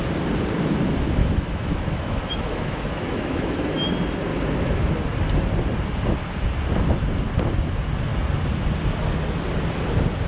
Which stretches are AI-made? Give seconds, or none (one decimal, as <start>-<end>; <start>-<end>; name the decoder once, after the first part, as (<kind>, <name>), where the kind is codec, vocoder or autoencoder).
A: 1.2-3.7 (autoencoder, DAC-VAE); 4.3-4.9